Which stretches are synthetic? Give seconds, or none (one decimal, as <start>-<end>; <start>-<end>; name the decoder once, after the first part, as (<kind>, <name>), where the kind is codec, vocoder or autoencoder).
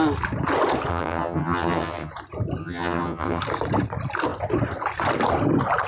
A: 0.9-2.1 (vocoder, HiFi-GAN); 2.6-3.4